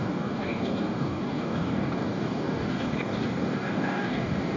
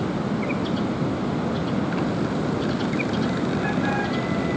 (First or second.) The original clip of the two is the second